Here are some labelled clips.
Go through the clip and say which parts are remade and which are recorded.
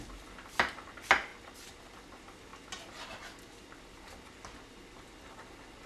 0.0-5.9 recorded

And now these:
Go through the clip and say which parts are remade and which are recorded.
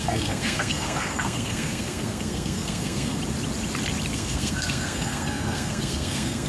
0.0-3.2 remade; 3.2-4.1 recorded; 4.1-6.5 remade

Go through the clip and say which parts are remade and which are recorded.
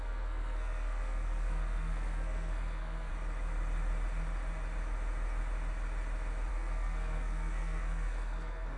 0.0-3.1 remade; 3.1-6.5 recorded; 6.5-8.8 remade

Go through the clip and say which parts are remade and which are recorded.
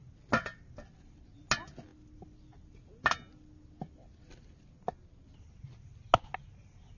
0.0-7.0 recorded